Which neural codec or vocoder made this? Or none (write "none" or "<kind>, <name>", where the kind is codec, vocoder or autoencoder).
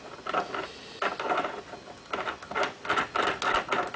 none